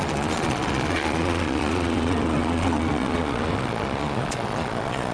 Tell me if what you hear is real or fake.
fake